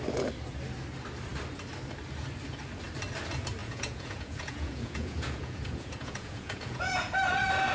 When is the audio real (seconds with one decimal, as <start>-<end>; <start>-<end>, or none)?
0.0-3.6; 6.9-7.7